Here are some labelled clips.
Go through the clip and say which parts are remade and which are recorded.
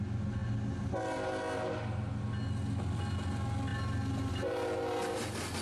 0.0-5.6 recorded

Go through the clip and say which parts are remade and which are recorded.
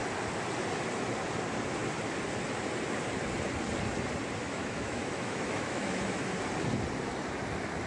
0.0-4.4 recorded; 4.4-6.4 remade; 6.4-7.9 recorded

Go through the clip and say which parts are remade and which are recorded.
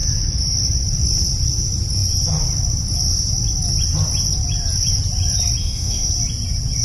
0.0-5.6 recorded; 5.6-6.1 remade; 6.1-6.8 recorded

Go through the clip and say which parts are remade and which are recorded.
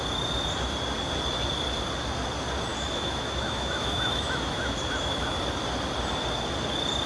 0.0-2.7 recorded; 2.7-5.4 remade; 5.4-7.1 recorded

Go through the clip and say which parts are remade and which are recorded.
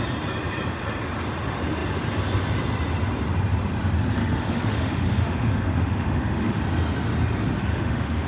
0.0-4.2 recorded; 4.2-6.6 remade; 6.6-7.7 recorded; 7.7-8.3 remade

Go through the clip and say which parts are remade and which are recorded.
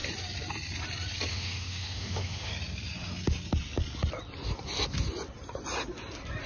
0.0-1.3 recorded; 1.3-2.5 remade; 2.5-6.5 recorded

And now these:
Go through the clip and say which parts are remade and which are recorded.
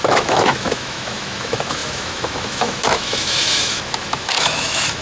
0.0-5.0 remade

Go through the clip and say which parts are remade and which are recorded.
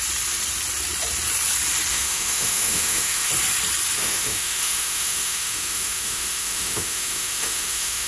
0.0-1.9 recorded; 1.9-3.3 remade; 3.3-4.0 recorded; 4.0-8.1 remade